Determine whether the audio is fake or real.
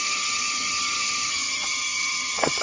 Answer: fake